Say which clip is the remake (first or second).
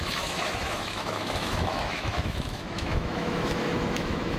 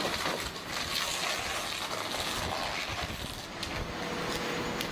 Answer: first